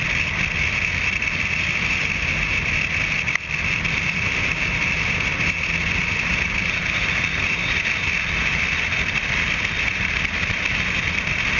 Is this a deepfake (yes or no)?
no